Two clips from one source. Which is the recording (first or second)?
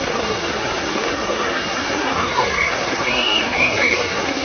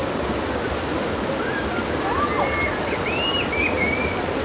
second